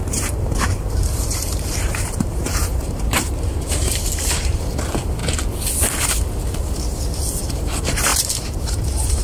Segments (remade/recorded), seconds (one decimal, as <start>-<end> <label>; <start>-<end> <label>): 0.0-5.2 remade; 5.2-7.6 recorded; 7.6-9.2 remade

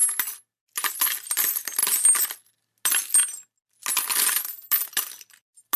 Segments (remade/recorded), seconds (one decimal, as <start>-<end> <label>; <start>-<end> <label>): 0.0-5.8 recorded